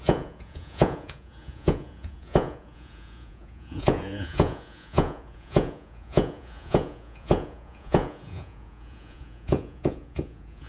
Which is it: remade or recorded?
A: remade